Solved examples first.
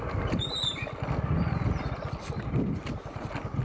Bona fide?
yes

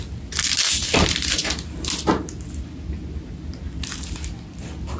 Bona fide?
yes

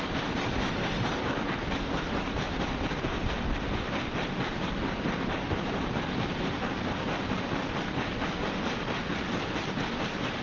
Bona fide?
no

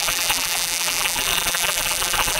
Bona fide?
no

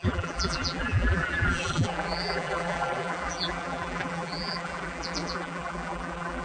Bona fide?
no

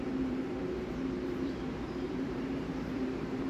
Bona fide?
no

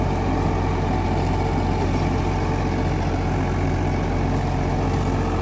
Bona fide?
yes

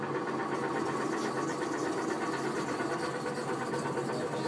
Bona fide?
yes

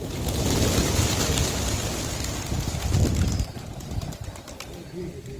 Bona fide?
yes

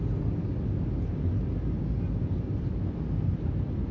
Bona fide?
yes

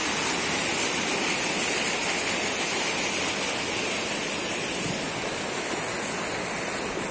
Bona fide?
yes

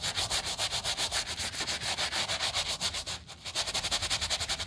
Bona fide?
yes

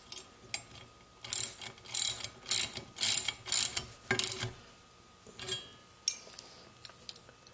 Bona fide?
yes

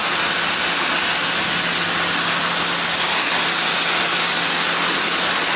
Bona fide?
yes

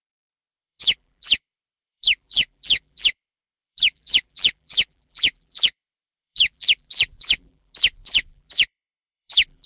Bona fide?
no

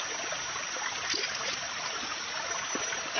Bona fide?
yes